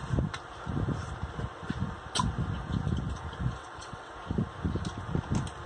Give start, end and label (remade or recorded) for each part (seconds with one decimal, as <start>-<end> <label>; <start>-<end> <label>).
0.0-3.6 recorded; 3.6-4.1 remade; 4.1-5.7 recorded